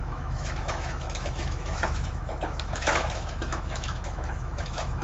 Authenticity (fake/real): fake